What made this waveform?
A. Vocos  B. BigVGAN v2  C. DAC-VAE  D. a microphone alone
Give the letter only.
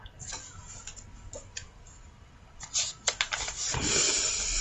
D